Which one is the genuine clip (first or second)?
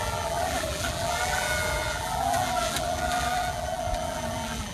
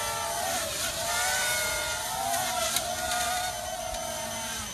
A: second